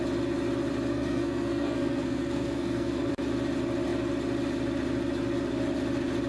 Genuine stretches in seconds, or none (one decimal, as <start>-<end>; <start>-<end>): 0.0-0.9; 3.1-6.3